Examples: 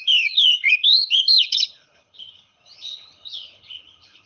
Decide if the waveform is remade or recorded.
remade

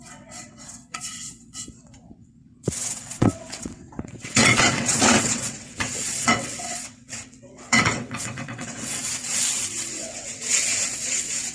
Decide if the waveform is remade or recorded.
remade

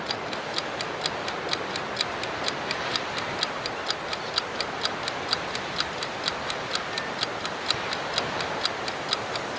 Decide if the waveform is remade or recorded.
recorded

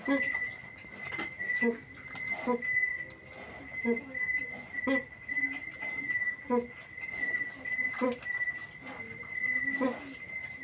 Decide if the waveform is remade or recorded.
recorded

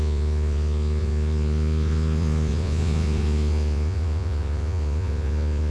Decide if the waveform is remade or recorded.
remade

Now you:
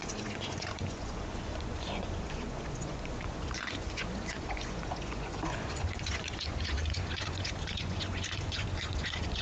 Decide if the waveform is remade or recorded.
remade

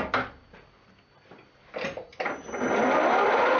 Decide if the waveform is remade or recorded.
remade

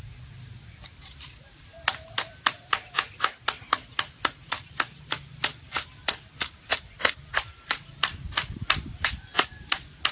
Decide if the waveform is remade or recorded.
recorded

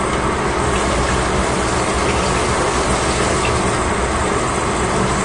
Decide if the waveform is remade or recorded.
recorded